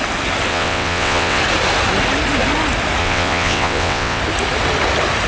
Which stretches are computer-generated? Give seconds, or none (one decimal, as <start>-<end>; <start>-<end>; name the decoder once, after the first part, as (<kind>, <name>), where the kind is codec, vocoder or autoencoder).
0.5-1.4 (vocoder, WaveNeXt); 3.0-4.2